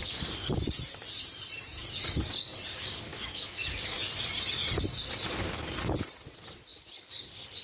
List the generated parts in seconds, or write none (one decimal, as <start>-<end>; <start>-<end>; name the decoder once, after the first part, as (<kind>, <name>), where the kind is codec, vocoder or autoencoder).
3.1-3.7 (autoencoder, DAC-VAE)